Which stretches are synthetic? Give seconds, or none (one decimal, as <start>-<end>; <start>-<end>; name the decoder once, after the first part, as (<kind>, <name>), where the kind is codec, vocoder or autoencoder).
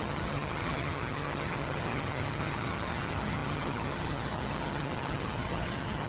0.0-6.1 (vocoder, HiFi-GAN)